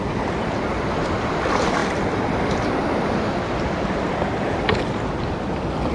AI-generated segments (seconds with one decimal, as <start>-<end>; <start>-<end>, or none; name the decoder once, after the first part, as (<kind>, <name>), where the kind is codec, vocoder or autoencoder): none